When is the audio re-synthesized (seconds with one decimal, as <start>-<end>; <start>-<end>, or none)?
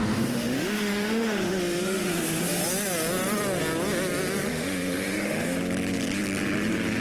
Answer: 0.0-2.6; 4.5-5.6